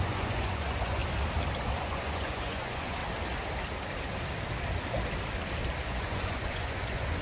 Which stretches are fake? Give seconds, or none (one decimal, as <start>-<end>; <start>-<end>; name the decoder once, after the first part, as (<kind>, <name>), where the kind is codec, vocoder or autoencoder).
0.0-1.0 (vocoder, Vocos); 1.8-3.0; 5.8-7.2